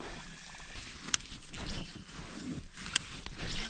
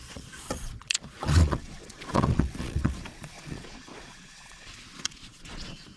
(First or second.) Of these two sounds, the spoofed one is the second